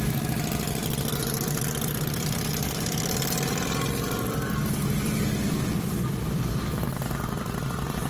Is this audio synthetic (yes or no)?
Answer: no